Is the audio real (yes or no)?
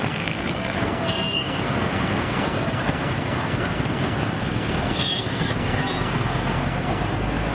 no